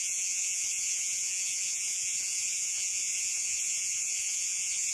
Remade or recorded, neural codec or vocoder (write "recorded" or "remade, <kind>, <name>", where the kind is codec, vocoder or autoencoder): remade, vocoder, Vocos